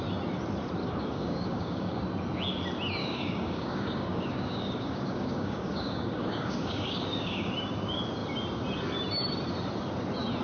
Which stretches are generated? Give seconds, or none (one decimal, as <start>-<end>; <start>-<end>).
0.8-2.0; 3.0-7.5